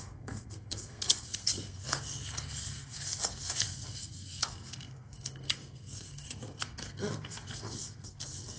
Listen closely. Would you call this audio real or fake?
fake